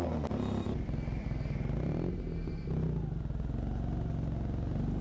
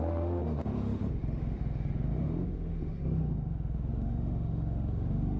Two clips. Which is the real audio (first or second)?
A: first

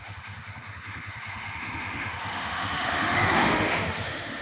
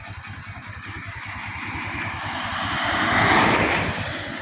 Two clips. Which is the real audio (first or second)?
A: second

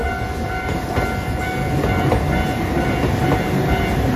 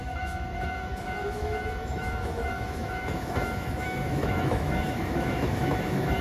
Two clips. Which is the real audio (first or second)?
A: first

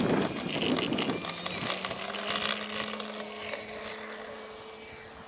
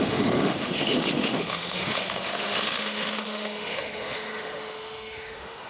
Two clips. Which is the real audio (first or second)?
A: first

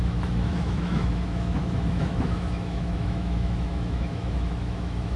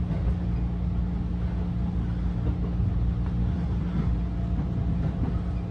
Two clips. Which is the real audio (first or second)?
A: second